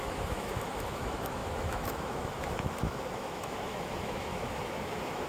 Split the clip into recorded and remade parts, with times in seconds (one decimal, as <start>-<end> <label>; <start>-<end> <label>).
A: 0.0-5.3 remade